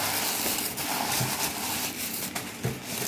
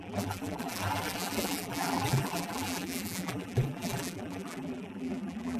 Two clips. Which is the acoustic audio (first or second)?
first